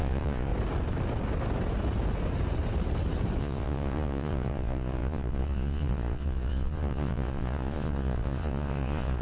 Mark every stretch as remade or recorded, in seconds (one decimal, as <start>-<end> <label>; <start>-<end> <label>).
0.0-0.5 remade; 0.5-3.4 recorded; 3.4-9.2 remade